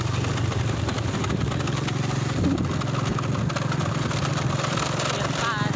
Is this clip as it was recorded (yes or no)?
yes